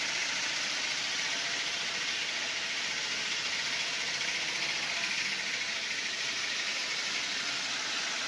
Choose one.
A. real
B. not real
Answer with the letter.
A